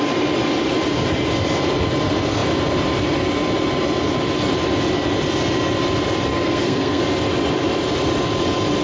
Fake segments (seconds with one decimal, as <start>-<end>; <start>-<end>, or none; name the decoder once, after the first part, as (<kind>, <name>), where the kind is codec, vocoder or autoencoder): 6.3-7.0 (codec, SNAC)